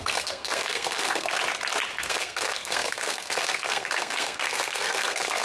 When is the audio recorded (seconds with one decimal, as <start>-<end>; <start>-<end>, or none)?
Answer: 1.4-2.0